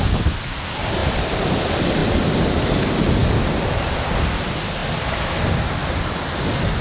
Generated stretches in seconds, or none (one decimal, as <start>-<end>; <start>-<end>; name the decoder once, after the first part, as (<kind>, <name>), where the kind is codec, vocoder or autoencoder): 1.0-1.5 (vocoder, BigVGAN v2); 3.2-3.7